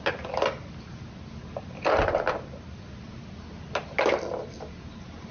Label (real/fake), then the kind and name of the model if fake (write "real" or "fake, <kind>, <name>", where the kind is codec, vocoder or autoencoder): real